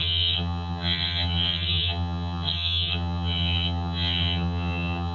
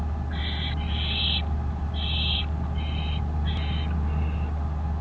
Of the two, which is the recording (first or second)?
second